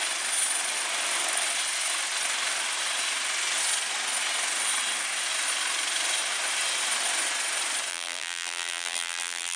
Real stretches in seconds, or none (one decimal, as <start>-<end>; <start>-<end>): 0.0-7.9